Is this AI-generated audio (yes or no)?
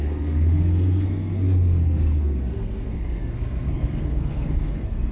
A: yes